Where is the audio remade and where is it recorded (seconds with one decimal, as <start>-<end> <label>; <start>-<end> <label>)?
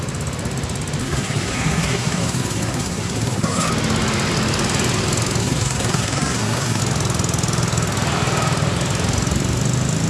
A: 0.0-1.0 recorded; 1.0-3.7 remade; 3.7-5.4 recorded; 5.4-6.8 remade; 6.8-10.1 recorded